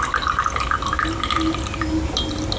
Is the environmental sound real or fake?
real